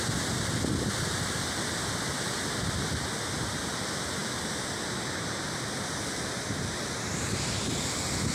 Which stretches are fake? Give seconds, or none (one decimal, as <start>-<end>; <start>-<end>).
0.0-0.7; 3.0-8.3